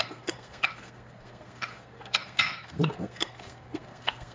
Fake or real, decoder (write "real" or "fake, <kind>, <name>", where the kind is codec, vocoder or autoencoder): fake, codec, SNAC